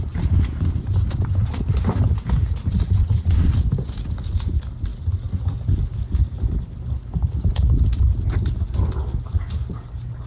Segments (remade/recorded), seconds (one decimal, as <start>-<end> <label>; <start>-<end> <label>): 0.0-3.0 recorded; 3.0-3.5 remade; 3.5-10.3 recorded